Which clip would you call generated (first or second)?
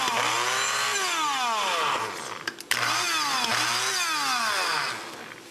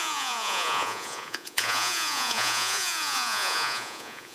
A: second